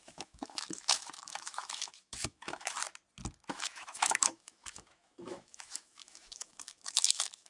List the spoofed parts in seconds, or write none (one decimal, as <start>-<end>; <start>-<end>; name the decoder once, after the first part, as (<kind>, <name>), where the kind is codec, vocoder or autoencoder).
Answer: 0.0-2.8 (autoencoder, DAC-VAE); 3.5-7.5